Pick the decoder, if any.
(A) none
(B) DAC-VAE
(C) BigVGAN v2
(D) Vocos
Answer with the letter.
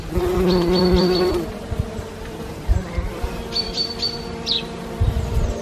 C